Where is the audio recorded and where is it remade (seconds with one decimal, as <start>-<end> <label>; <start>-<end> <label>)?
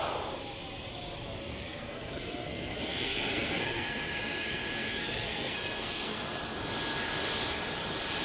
0.0-1.5 recorded; 1.5-6.4 remade; 6.4-8.2 recorded